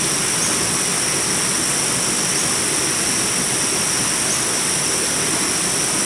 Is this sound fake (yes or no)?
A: no